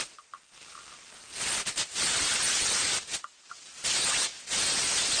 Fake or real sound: real